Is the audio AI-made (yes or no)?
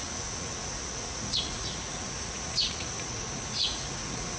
yes